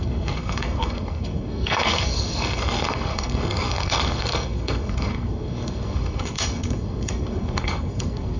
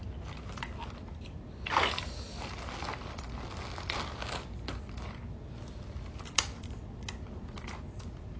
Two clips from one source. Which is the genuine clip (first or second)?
second